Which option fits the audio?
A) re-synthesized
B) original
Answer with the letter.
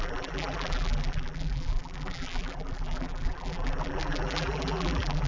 A